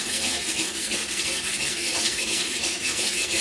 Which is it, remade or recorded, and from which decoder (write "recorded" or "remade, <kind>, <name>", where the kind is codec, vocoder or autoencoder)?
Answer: remade, codec, SNAC